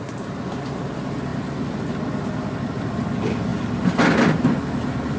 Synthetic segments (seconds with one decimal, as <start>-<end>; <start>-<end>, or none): none